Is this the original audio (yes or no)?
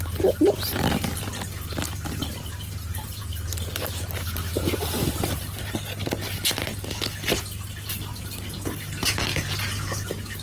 yes